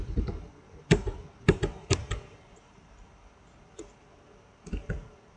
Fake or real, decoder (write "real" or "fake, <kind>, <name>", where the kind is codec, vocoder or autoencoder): fake, vocoder, BigVGAN v2